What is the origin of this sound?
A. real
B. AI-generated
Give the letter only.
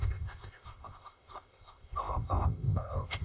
B